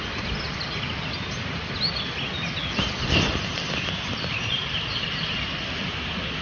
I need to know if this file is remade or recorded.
recorded